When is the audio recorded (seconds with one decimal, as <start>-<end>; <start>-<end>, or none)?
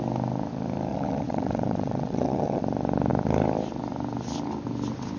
0.0-0.9; 2.6-5.2